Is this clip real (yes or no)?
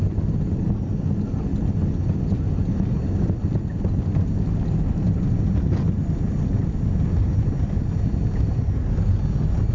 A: yes